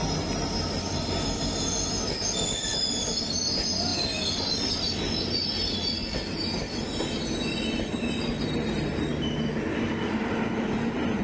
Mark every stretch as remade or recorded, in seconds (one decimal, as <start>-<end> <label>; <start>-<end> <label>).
0.0-11.2 recorded